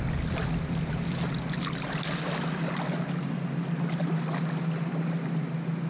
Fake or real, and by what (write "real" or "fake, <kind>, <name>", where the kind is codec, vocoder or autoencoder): real